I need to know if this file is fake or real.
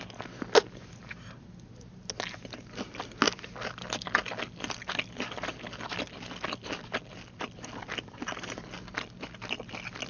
real